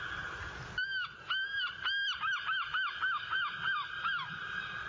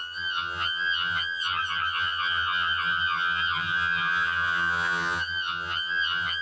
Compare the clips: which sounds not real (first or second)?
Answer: second